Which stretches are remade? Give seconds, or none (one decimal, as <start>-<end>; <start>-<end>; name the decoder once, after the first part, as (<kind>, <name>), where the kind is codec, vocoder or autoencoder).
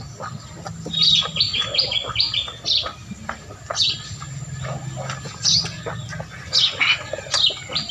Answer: 3.0-4.8 (vocoder, BigVGAN v2); 6.0-7.1